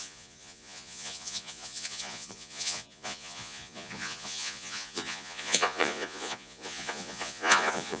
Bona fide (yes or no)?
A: no